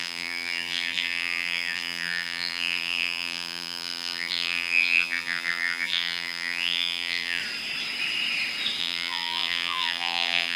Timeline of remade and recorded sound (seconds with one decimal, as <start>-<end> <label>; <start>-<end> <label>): 0.0-7.4 remade; 7.4-8.8 recorded; 8.8-10.6 remade